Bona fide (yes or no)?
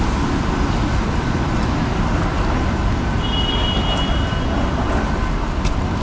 yes